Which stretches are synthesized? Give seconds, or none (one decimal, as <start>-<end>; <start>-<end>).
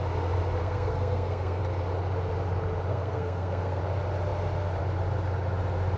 0.6-1.6; 2.9-3.8